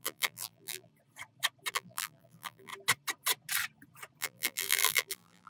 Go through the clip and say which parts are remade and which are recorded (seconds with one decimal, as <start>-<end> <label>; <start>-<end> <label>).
0.0-0.9 remade; 0.9-1.7 recorded; 1.7-2.7 remade; 2.7-4.2 recorded; 4.2-5.5 remade